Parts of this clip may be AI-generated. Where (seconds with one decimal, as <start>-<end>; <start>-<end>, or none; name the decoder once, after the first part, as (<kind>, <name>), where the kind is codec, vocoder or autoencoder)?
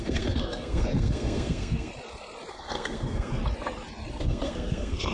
0.0-1.9 (codec, SNAC); 2.5-3.4; 4.1-5.1